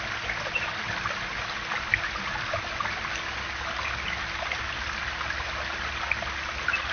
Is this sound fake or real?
real